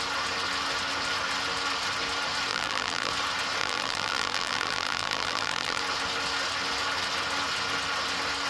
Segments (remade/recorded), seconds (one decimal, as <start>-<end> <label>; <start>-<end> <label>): 0.0-2.5 recorded; 2.5-3.1 remade; 3.1-3.6 recorded; 3.6-5.8 remade; 5.8-8.5 recorded